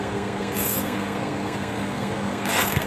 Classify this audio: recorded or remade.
remade